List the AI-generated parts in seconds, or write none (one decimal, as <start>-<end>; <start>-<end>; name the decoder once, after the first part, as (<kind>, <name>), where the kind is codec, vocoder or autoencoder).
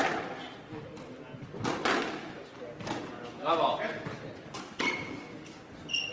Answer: none